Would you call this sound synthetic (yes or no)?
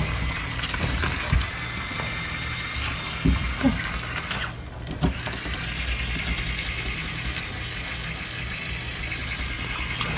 no